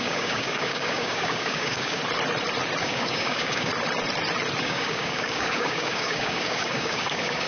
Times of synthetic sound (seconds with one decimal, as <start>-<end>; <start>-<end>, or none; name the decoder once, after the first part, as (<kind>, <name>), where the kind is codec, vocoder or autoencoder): 0.0-2.0 (codec, DAC); 2.8-3.7; 4.6-7.5